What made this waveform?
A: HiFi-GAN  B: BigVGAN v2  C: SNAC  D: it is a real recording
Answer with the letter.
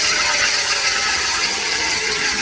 A